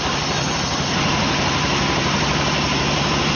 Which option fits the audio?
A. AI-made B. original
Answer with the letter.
B